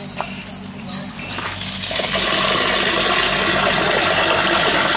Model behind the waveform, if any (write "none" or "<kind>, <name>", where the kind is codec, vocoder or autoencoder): none